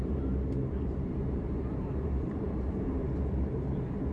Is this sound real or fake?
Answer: fake